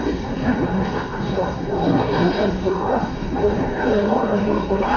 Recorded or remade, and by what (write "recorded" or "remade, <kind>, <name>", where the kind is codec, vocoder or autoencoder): remade, codec, SNAC